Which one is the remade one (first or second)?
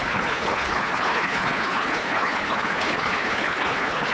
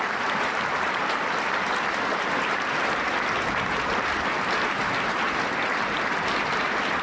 first